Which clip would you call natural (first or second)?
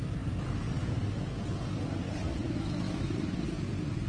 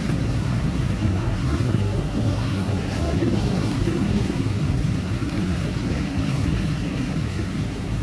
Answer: first